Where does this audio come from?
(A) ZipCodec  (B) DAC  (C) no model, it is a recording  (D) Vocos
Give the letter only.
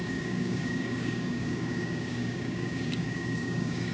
B